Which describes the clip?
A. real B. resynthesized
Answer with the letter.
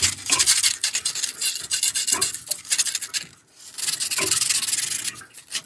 A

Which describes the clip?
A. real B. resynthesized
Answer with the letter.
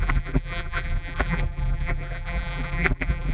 B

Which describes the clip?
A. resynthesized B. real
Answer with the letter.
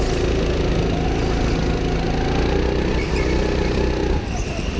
B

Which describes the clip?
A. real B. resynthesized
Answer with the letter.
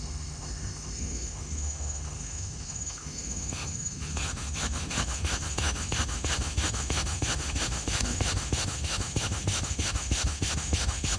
B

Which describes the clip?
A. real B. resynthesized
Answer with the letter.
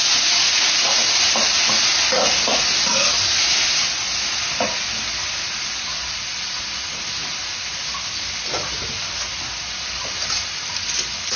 A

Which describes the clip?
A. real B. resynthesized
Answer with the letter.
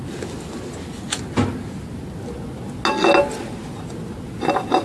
A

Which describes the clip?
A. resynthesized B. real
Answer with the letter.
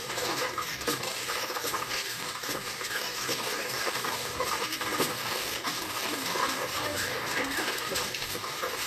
A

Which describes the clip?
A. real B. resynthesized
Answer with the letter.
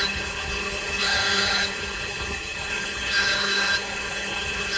B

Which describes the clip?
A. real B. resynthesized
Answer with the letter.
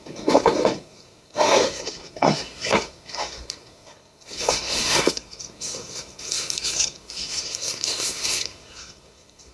B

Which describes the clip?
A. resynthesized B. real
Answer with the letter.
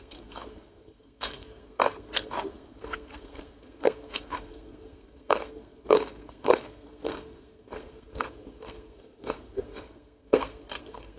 A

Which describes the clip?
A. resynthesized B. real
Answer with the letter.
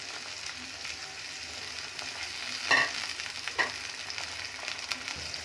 B